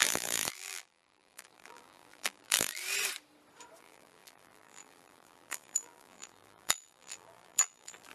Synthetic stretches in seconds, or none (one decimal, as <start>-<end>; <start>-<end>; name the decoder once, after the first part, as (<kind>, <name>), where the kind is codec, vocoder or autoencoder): 0.0-2.8 (vocoder, BigVGAN v2); 3.8-8.1